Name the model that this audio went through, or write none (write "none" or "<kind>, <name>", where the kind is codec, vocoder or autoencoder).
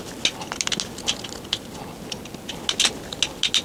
none